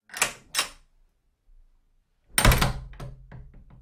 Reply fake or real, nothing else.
real